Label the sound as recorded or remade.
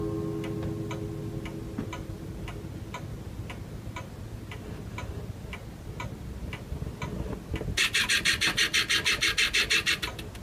recorded